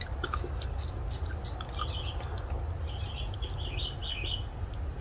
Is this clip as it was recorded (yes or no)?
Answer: yes